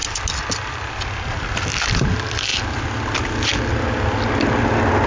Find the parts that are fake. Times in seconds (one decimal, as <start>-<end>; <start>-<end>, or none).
none